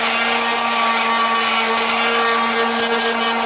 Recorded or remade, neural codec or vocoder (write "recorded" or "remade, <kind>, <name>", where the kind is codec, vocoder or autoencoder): recorded